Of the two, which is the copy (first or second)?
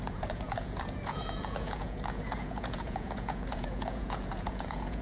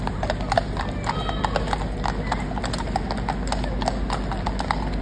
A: first